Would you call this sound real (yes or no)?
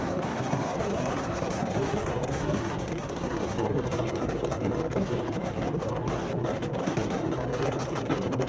no